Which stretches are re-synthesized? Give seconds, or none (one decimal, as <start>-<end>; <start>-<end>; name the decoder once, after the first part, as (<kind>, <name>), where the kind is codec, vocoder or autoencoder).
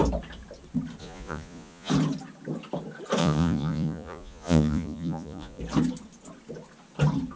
1.0-1.9 (vocoder, Vocos); 3.2-5.6